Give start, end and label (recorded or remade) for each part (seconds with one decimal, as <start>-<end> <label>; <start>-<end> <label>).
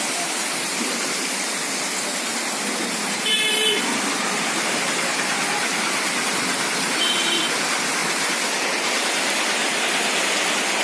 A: 0.0-2.3 recorded; 2.3-6.4 remade; 6.4-8.0 recorded; 8.0-8.6 remade; 8.6-9.6 recorded; 9.6-10.3 remade; 10.3-10.8 recorded